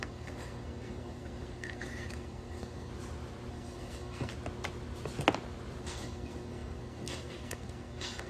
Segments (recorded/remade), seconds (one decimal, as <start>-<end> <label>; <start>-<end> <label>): 0.0-2.9 remade; 2.9-3.5 recorded; 3.5-4.3 remade; 4.3-5.8 recorded; 5.8-8.3 remade